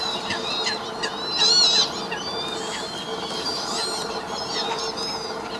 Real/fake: real